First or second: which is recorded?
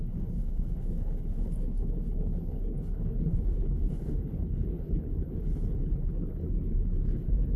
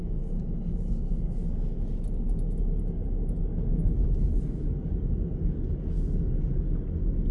second